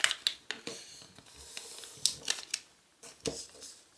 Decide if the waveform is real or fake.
real